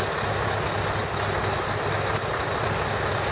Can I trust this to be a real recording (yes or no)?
yes